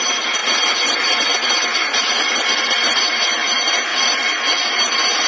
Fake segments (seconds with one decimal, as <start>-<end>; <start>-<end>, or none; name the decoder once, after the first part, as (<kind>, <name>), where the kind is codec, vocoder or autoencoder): none